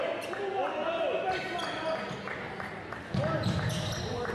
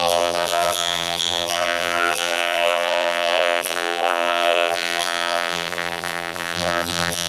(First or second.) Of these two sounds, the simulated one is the second